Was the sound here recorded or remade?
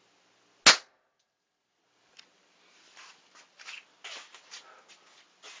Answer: recorded